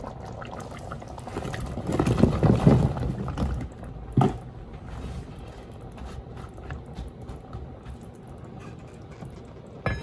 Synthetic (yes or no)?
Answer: no